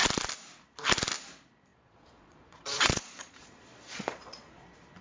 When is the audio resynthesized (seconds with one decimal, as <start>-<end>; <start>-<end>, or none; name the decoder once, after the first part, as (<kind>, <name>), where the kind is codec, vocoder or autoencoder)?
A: 1.7-4.5 (vocoder, Vocos)